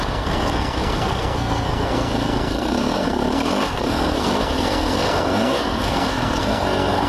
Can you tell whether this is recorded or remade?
remade